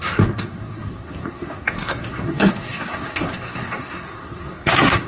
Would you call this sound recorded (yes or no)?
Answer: no